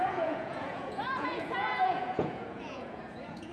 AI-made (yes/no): yes